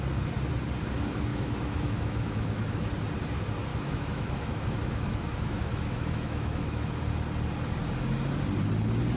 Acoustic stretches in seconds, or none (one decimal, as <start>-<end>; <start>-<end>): 0.0-1.3; 2.9-3.7; 7.0-9.2